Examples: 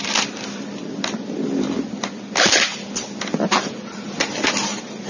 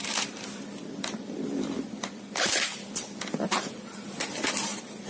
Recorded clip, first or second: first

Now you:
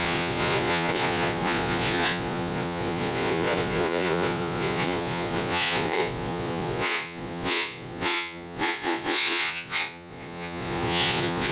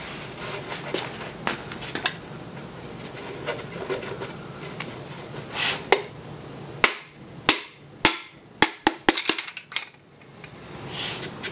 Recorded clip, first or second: second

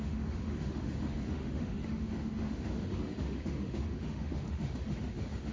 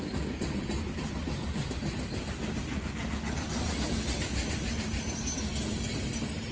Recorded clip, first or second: second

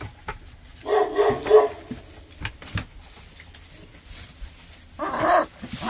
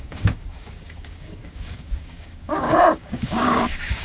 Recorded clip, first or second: first